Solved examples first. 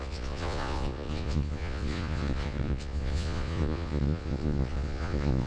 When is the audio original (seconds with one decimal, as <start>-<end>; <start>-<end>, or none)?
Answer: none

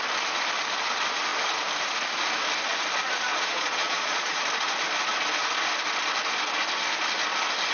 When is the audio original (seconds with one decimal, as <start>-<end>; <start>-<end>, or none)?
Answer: 0.0-3.3; 4.4-7.7

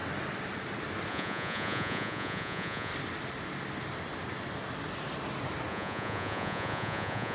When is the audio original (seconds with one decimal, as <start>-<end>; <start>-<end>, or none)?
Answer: 0.0-1.1; 2.9-5.7

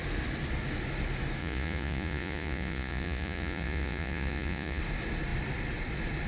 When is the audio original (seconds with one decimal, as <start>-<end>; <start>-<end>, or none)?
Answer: 0.0-1.4; 4.8-6.3

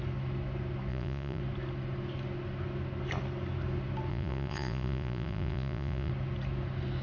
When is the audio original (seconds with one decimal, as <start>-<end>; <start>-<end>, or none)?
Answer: 0.0-0.9; 1.4-4.1; 6.1-7.0

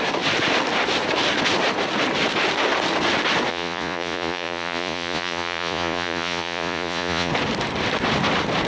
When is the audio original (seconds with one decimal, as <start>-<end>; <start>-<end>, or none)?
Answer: 0.0-3.5; 7.3-8.7